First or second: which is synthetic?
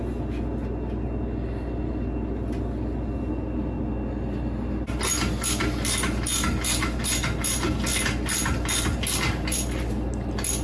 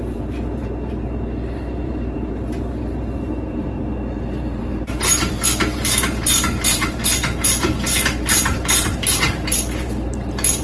second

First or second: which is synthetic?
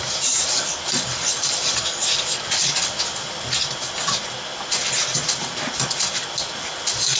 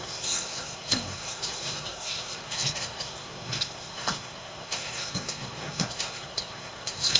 second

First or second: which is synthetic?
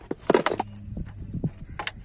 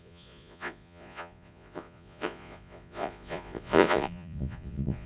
second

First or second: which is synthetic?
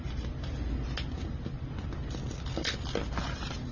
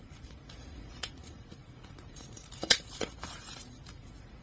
second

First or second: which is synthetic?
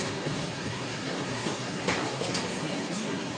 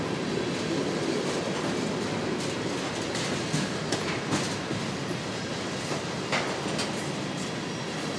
first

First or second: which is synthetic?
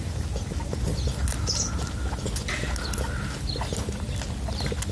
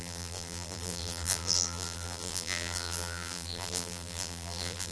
second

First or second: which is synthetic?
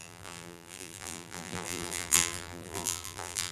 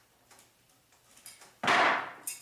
first